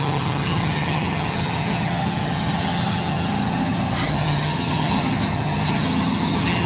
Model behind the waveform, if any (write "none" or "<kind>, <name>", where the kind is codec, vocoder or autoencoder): vocoder, HiFi-GAN